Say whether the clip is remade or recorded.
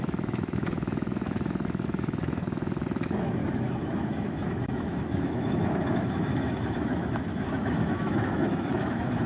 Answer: remade